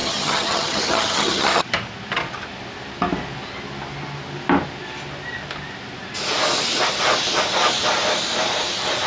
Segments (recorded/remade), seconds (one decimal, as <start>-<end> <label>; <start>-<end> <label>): 0.0-1.7 remade; 1.7-9.1 recorded